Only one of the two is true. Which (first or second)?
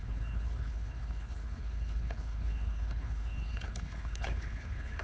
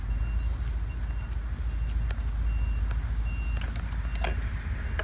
second